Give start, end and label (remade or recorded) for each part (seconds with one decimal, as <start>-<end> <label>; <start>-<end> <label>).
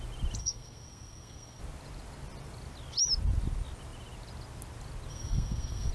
0.0-0.4 recorded; 0.4-1.6 remade; 1.6-5.1 recorded; 5.1-5.9 remade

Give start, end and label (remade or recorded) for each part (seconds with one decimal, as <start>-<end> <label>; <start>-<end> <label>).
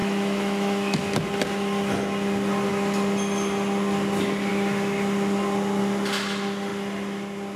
0.0-1.0 remade; 1.0-7.6 recorded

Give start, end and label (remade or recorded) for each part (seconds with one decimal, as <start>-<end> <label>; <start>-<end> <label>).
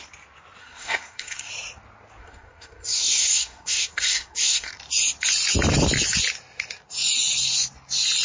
0.0-0.6 recorded; 0.6-1.5 remade; 1.5-2.2 recorded; 2.2-4.7 remade; 4.7-8.2 recorded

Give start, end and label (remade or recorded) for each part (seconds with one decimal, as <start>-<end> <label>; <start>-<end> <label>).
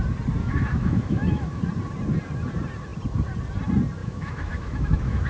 0.0-0.4 recorded; 0.4-1.6 remade; 1.6-4.0 recorded; 4.0-5.3 remade